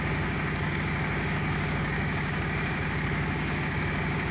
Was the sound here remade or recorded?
remade